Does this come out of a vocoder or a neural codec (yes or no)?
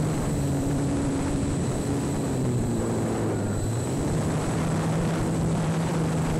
yes